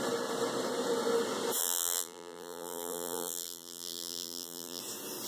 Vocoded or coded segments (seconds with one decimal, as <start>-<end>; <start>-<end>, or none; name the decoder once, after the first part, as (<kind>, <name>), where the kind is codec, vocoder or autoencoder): 1.6-4.8 (vocoder, BigVGAN v2)